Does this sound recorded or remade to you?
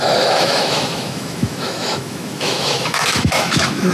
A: remade